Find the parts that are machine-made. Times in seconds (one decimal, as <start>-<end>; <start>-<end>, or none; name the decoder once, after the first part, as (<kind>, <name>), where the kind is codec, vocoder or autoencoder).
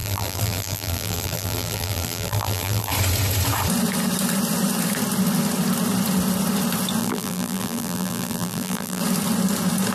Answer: 0.0-2.9 (vocoder, BigVGAN v2); 7.0-9.0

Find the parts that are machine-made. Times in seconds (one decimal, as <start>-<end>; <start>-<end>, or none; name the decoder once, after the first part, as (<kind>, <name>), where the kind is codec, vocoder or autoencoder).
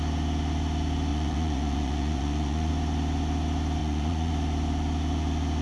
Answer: 1.1-2.7 (vocoder, Vocos); 3.8-4.3